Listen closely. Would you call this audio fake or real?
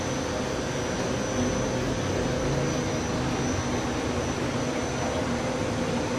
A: real